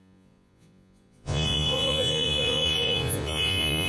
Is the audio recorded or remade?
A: remade